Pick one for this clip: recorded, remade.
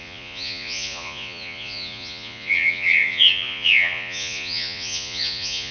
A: remade